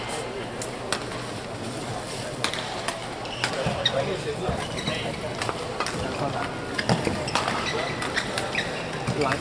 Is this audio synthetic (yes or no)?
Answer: no